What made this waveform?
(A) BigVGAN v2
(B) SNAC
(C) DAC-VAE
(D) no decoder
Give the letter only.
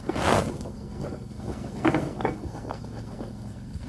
B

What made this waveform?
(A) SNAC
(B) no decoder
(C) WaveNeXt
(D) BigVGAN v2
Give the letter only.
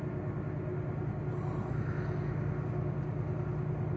B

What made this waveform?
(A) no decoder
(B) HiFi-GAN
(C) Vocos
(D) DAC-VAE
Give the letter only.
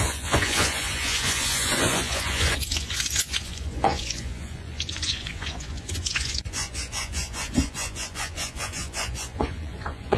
C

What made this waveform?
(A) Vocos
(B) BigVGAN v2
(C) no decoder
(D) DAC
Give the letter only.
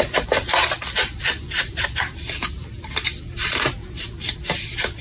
B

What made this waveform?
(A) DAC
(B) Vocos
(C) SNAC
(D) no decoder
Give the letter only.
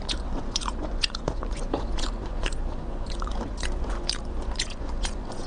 B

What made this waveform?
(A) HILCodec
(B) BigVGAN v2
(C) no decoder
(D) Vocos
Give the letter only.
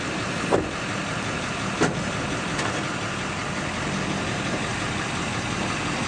C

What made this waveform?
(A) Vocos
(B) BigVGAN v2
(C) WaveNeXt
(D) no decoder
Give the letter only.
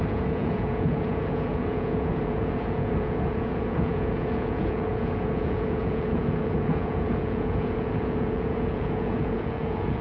A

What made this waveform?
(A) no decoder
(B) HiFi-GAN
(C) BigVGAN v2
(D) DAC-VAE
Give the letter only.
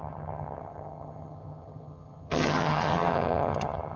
B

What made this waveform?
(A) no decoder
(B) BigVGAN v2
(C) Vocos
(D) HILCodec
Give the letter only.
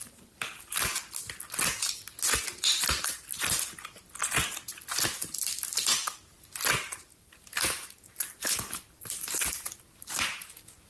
A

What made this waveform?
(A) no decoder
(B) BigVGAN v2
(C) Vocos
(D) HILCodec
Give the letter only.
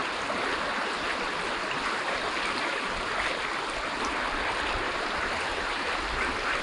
A